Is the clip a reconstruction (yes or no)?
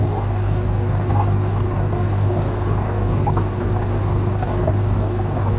yes